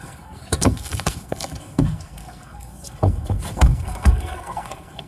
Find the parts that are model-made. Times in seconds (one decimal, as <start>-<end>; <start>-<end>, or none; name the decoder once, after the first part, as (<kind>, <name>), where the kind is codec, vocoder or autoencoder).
0.0-5.1 (codec, SNAC)